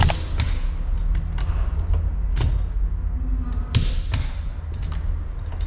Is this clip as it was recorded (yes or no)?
yes